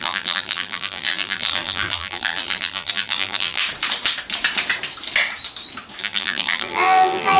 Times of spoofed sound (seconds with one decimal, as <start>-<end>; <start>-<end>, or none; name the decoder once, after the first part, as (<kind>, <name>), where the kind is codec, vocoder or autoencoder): 0.0-3.6 (vocoder, BigVGAN v2); 6.0-7.4